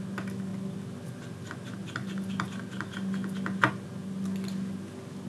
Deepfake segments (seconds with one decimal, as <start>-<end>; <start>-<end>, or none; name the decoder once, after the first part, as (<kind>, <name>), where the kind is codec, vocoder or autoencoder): none